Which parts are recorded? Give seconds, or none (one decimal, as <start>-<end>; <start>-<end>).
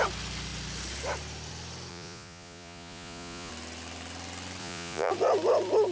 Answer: 0.0-1.9; 3.5-4.6; 5.1-5.9